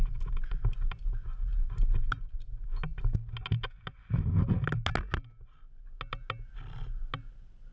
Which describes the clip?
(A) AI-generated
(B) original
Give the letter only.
B